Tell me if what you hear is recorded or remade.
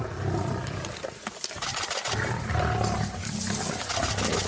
recorded